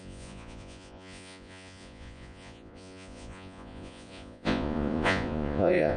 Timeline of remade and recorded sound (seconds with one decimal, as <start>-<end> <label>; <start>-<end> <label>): 0.0-6.0 remade